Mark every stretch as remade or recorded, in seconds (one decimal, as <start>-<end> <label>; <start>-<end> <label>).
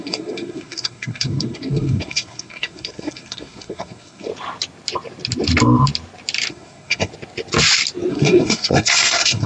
0.0-4.3 remade; 4.3-6.5 recorded; 6.5-7.1 remade; 7.1-8.1 recorded; 8.1-9.5 remade